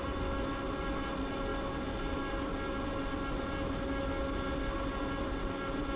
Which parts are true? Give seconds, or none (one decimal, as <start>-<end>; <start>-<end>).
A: 0.0-6.0